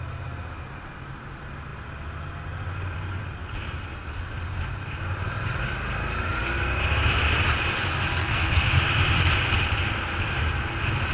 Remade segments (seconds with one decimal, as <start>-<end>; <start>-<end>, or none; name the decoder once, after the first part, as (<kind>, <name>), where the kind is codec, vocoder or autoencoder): 8.1-8.7 (codec, SNAC)